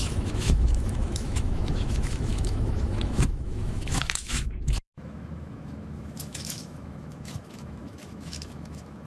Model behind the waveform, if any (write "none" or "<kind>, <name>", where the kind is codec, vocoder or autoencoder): autoencoder, DAC-VAE